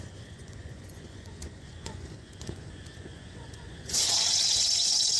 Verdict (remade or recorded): remade